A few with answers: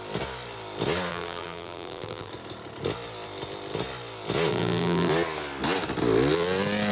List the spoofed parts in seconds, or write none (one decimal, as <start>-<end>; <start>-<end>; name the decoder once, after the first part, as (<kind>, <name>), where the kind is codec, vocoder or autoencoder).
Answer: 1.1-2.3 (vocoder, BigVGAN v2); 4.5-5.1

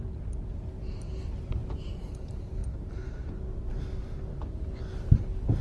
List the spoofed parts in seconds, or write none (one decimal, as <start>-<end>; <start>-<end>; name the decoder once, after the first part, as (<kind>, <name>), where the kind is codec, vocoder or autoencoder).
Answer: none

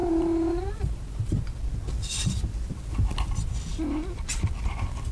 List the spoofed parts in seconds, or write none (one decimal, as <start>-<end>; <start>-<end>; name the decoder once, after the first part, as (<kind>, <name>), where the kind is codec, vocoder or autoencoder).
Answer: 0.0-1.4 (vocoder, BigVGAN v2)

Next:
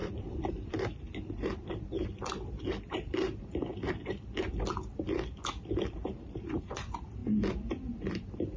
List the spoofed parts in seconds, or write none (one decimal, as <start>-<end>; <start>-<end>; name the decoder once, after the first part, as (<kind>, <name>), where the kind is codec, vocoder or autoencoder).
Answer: 0.0-3.7 (vocoder, BigVGAN v2); 5.5-7.2; 8.1-8.6